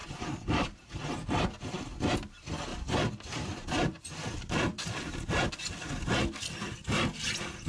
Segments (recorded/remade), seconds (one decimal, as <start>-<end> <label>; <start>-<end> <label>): 0.0-1.4 remade; 1.4-2.7 recorded; 2.7-5.5 remade; 5.5-7.7 recorded